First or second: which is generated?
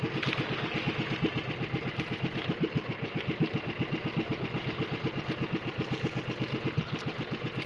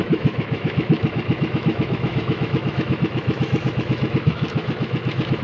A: second